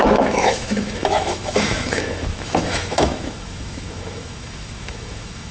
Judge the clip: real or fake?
fake